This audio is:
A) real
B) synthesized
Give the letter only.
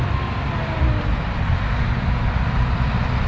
B